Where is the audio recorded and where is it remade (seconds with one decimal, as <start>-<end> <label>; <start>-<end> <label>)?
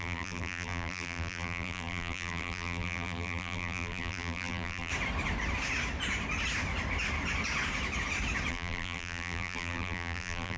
0.0-4.9 remade; 4.9-8.5 recorded; 8.5-10.6 remade